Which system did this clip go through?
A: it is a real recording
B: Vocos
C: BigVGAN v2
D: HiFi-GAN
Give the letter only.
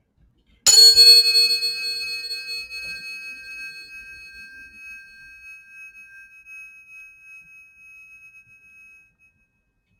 A